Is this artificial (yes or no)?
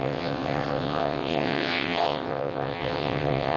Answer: yes